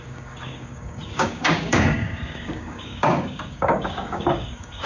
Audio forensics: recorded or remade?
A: remade